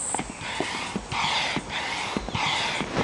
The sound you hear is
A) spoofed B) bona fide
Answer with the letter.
B